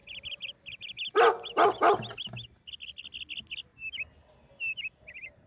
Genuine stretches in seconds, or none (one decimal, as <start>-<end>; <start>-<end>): 0.0-5.5

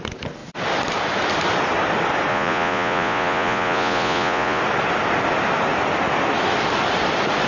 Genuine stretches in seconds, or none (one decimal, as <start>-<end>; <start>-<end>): 0.0-2.3; 4.6-7.5

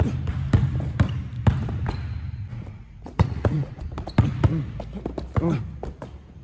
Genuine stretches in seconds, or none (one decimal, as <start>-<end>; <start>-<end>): 0.0-2.5; 3.8-6.4

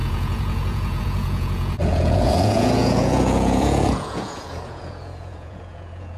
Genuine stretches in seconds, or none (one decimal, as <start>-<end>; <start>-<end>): none

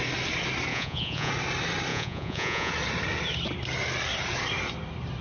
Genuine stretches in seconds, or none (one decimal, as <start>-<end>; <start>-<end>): 0.0-0.7; 1.3-1.9; 2.7-5.2

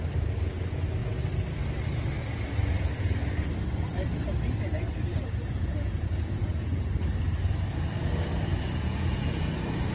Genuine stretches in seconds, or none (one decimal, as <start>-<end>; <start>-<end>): 0.0-5.1; 6.9-8.5; 9.5-9.9